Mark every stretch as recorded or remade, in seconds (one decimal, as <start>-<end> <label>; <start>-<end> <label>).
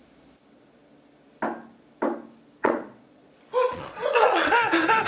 0.0-2.6 recorded; 2.6-3.3 remade; 3.3-3.7 recorded; 3.7-4.5 remade; 4.5-5.1 recorded